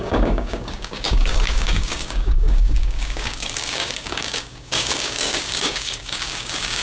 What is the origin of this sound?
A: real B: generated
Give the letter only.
B